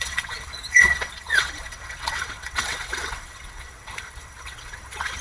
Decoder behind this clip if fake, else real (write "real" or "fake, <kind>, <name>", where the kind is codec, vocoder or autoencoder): fake, vocoder, WaveNeXt